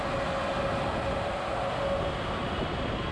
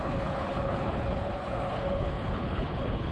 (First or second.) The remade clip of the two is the second